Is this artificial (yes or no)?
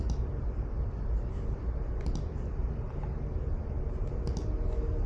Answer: no